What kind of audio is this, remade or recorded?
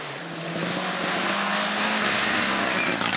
recorded